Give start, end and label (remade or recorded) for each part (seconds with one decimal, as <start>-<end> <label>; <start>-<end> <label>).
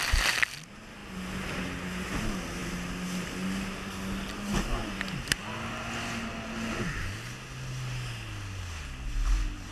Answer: 0.0-9.7 recorded